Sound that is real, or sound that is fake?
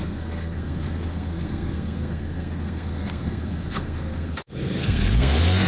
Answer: fake